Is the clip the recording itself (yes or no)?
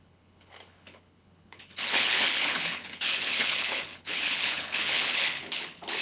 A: no